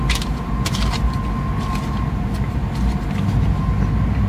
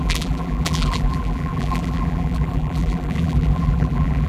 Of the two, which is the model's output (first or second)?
second